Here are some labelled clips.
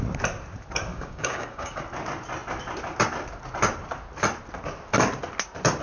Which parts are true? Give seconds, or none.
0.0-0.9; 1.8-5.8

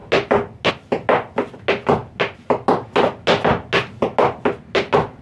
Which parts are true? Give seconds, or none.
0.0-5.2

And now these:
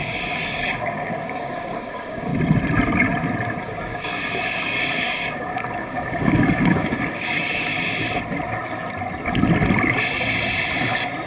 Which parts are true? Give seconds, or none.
2.3-3.6; 7.7-11.3

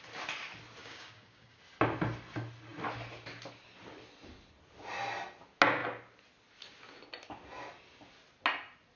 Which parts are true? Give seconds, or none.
0.0-0.8; 1.6-9.0